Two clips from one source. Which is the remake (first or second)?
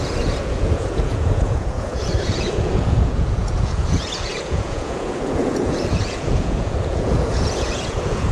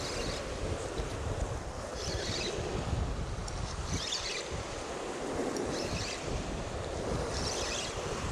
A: first